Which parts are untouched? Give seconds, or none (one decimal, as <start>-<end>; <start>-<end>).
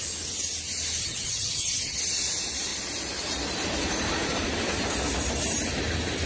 0.0-1.0; 2.0-6.3